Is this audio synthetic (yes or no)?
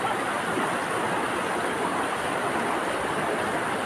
no